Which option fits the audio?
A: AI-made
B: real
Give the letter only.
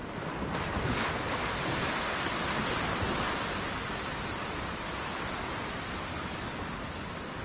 B